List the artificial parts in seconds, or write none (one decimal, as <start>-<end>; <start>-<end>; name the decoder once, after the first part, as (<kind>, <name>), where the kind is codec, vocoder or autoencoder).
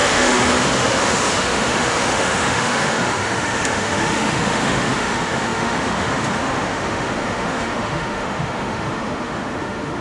0.0-10.0 (autoencoder, DAC-VAE)